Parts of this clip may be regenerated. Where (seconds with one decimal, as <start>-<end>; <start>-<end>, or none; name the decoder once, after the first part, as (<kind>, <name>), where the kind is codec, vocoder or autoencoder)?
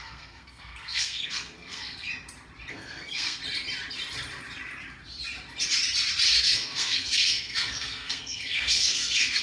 0.0-2.1 (codec, SNAC); 2.7-3.4; 6.4-9.4